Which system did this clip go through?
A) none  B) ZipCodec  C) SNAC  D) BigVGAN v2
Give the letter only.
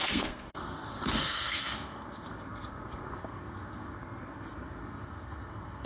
C